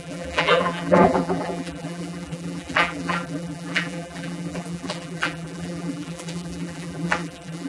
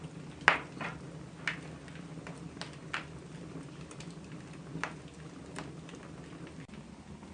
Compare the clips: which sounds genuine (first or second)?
second